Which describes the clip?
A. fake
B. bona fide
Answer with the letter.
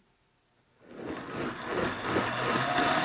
B